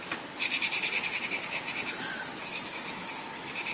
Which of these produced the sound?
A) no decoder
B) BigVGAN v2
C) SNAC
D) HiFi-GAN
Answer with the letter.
A